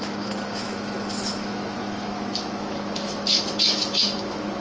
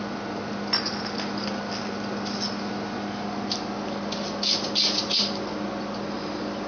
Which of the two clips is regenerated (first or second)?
first